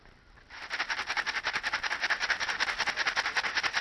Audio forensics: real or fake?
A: real